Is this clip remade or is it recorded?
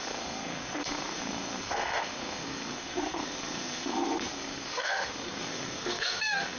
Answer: remade